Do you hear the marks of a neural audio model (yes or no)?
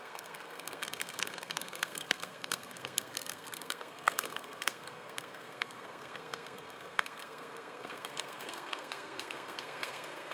yes